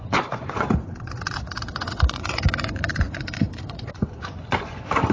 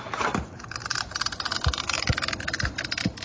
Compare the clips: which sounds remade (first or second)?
first